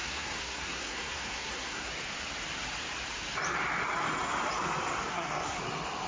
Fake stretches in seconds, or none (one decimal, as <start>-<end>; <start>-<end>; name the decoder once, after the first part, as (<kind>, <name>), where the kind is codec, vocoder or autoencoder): 0.0-1.9 (codec, SNAC); 5.1-5.6